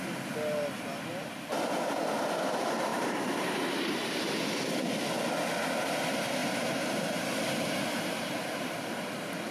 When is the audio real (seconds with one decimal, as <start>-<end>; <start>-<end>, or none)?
0.0-2.9; 4.1-6.4; 8.6-9.5